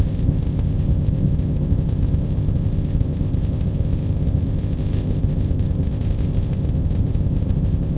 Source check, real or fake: fake